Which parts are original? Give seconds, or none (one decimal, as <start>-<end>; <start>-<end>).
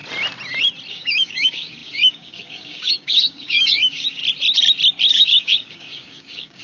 0.0-0.9; 4.2-5.1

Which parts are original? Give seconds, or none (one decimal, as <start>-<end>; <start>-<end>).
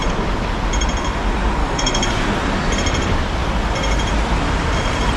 0.0-1.6; 2.1-5.2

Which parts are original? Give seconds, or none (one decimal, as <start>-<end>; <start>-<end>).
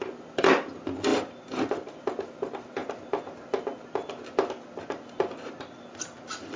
2.8-5.9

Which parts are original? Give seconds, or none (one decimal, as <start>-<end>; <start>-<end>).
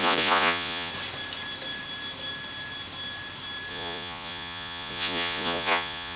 0.9-3.7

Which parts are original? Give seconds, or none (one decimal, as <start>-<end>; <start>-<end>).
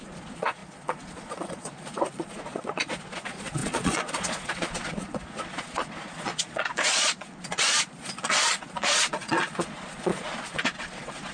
none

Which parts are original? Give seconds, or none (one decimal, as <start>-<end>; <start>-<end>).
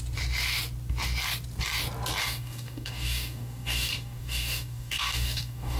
0.0-2.2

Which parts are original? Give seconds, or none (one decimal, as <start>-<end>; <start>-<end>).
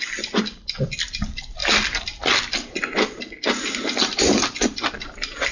1.6-4.2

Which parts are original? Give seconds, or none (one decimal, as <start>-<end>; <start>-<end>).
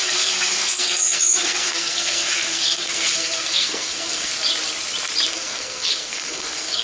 4.3-5.3